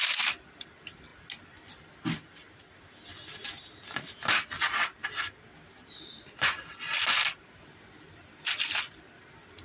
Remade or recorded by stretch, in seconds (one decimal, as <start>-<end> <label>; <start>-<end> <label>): 0.0-9.6 recorded